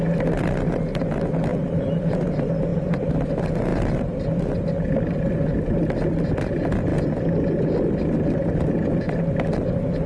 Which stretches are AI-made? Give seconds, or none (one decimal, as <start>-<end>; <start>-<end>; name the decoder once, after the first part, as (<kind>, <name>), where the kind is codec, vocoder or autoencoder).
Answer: 1.5-2.3 (vocoder, BigVGAN v2); 2.7-3.3; 3.7-4.4